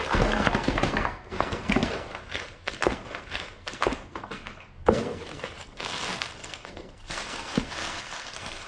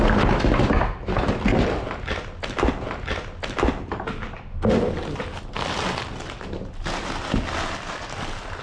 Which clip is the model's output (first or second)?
first